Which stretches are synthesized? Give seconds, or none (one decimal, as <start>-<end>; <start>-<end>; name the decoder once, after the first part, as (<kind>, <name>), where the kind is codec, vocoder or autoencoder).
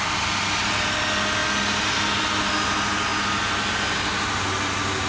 none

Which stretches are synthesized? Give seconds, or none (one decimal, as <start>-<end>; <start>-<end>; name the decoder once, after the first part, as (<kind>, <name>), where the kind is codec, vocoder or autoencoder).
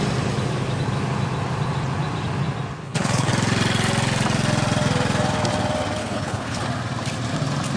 2.8-3.3 (codec, HILCodec); 6.0-6.6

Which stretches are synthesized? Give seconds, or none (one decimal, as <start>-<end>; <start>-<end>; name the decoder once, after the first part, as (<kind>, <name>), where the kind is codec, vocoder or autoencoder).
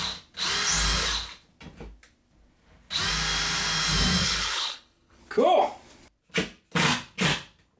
4.2-5.2 (codec, HILCodec)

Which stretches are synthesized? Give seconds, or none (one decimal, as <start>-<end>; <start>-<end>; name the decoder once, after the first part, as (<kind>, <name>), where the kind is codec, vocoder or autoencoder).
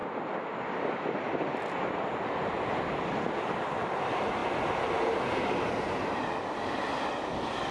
none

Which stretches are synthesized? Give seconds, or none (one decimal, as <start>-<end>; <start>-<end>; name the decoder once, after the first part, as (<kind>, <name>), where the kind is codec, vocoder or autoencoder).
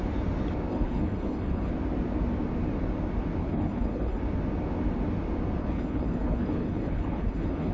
0.7-1.7 (codec, HILCodec); 3.4-4.2; 5.6-7.7